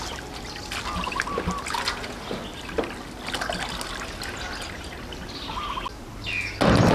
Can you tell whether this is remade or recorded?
recorded